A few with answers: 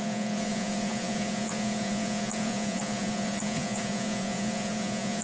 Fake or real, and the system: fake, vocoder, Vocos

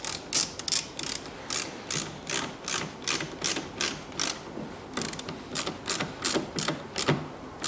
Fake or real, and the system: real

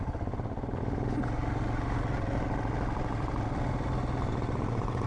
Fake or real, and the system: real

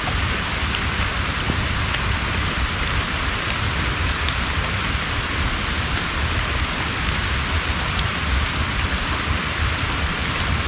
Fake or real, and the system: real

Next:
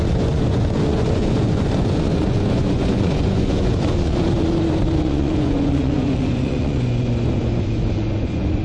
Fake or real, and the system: fake, vocoder, Vocos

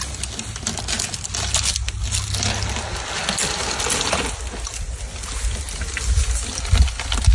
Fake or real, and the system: real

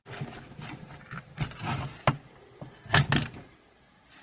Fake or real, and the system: real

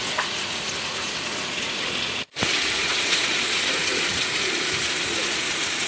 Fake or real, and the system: fake, vocoder, Vocos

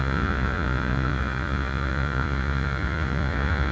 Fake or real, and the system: fake, vocoder, Vocos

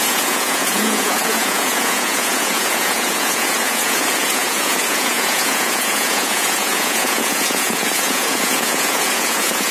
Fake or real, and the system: fake, vocoder, Vocos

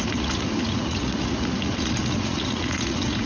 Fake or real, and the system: fake, vocoder, Vocos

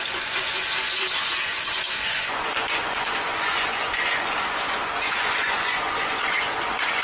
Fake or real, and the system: fake, vocoder, Vocos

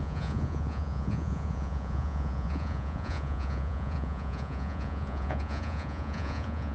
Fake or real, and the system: fake, vocoder, Vocos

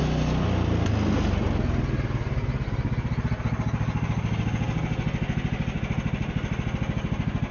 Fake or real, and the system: real